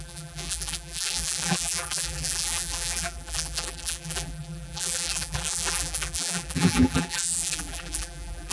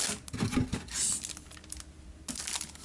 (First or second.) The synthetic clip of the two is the first